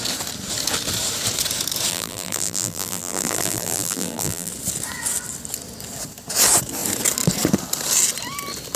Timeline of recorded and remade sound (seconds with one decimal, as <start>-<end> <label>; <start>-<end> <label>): 0.0-1.9 recorded; 1.9-4.5 remade; 4.5-8.8 recorded